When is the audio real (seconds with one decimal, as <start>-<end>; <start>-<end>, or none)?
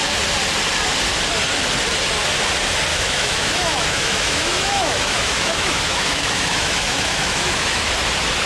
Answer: 0.0-2.9; 7.9-8.5